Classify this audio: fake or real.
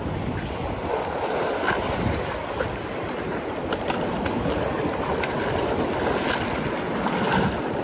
real